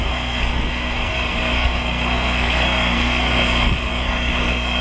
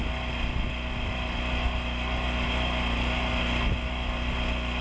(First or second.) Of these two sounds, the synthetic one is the first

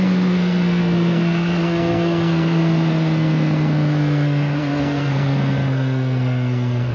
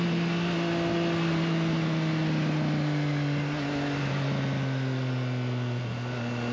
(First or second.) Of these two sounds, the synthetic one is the first